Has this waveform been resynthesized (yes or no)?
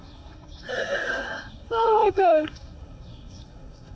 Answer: yes